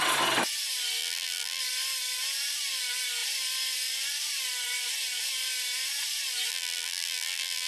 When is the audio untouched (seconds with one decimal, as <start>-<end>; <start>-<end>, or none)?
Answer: 0.0-1.0; 1.6-6.5